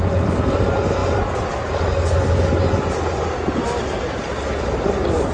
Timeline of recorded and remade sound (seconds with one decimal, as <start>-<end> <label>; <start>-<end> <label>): 0.0-5.3 recorded